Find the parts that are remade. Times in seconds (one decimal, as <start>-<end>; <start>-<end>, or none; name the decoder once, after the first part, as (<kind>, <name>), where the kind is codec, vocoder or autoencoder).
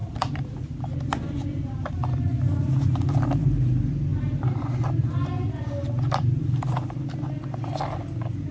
0.0-1.9 (vocoder, BigVGAN v2); 2.3-3.2; 4.1-7.3